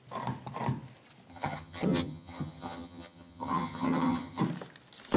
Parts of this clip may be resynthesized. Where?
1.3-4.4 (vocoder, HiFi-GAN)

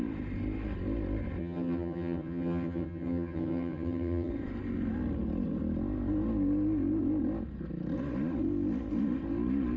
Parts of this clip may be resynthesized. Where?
1.4-4.3 (vocoder, HiFi-GAN)